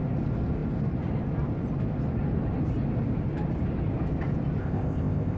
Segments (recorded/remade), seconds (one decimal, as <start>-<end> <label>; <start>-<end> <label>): 0.0-4.6 recorded; 4.6-5.4 remade

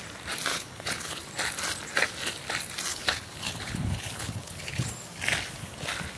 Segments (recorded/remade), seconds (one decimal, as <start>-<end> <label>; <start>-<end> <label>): 0.0-0.5 recorded; 0.5-1.2 remade; 1.2-2.9 recorded; 2.9-4.9 remade; 4.9-6.2 recorded